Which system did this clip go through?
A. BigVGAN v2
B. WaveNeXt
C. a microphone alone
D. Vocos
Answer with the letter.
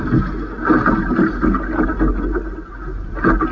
C